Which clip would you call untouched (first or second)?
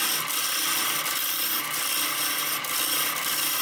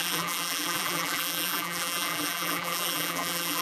first